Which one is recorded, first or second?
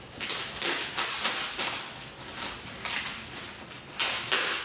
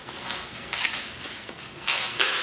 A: first